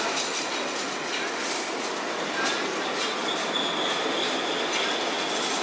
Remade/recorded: recorded